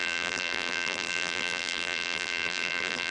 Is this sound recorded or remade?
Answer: remade